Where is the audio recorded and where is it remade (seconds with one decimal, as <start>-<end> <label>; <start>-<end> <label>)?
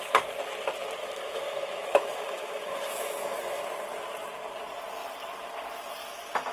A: 0.0-1.0 recorded; 1.0-3.6 remade; 3.6-6.5 recorded